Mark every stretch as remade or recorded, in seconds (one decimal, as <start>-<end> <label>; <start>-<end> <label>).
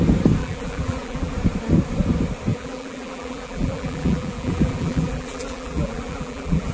0.0-0.4 recorded; 0.4-1.3 remade; 1.3-2.5 recorded; 2.5-6.7 remade